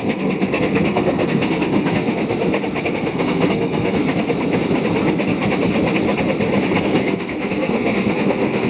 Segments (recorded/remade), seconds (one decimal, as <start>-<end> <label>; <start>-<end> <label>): 0.0-2.2 remade; 2.2-2.9 recorded; 2.9-4.0 remade; 4.0-6.8 recorded; 6.8-8.7 remade

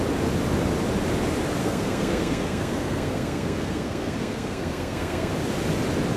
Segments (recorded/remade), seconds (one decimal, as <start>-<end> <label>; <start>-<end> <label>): 0.0-1.6 recorded; 1.6-5.3 remade; 5.3-6.2 recorded